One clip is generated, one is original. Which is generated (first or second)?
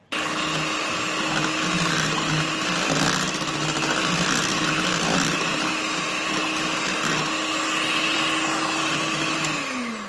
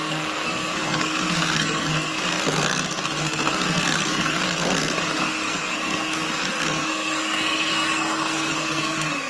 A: second